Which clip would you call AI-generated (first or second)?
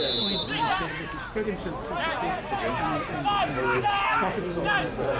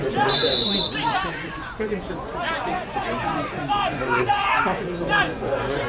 second